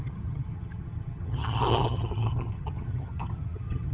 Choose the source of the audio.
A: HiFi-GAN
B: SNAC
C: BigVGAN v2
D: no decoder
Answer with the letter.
A